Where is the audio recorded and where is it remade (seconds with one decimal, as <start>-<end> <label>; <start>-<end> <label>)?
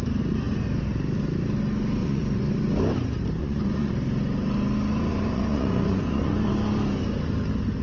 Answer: 0.0-2.0 recorded; 2.0-2.5 remade; 2.5-3.4 recorded; 3.4-3.9 remade; 3.9-5.1 recorded; 5.1-6.5 remade; 6.5-7.8 recorded